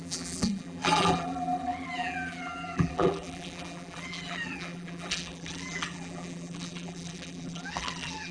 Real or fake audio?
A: fake